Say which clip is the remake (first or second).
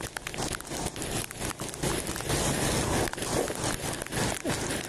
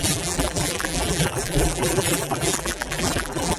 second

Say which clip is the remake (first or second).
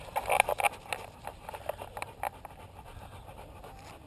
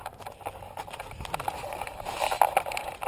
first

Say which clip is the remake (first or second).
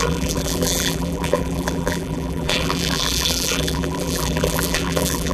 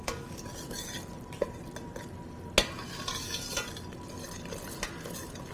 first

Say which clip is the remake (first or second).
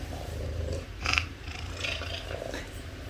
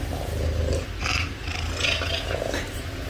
first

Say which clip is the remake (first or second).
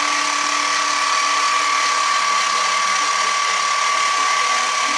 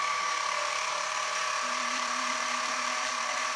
second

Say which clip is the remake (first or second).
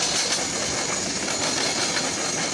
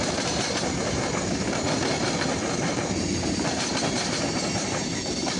second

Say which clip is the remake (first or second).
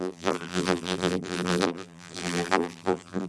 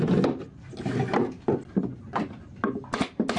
first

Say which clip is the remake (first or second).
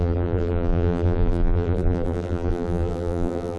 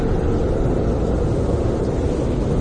first